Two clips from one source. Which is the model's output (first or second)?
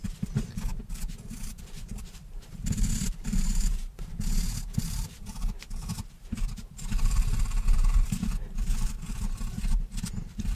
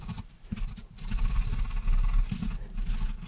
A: first